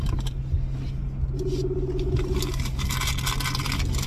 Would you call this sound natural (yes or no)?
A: yes